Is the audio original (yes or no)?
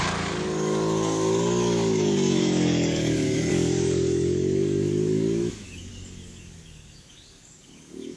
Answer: no